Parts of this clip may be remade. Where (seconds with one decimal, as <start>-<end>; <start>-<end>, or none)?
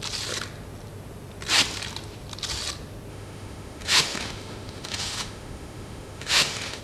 3.1-6.8